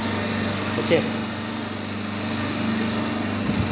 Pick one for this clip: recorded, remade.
recorded